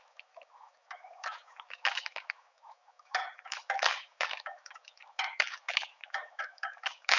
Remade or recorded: remade